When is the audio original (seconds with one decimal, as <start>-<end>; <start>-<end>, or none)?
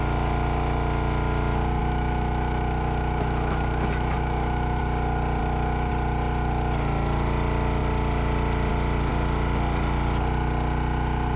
0.0-1.8; 4.8-5.4; 5.9-11.4